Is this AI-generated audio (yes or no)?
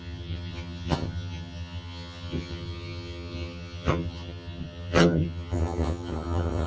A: yes